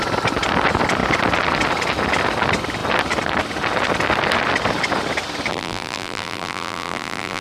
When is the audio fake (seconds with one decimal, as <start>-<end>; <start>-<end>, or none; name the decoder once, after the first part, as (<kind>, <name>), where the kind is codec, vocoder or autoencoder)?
5.5-7.4 (vocoder, BigVGAN v2)